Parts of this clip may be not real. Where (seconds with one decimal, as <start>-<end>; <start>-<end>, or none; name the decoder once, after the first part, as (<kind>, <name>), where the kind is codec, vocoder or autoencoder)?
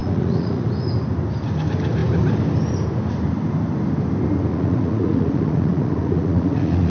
0.0-0.7 (vocoder, Vocos); 4.5-6.9